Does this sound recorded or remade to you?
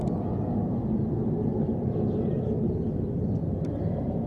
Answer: recorded